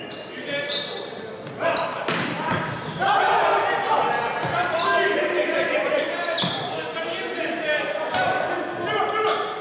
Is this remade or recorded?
remade